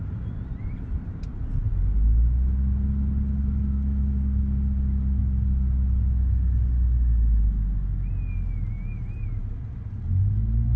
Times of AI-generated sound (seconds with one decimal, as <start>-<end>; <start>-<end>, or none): none